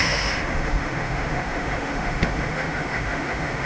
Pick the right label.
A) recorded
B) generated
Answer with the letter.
B